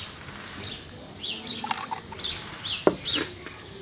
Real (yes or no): yes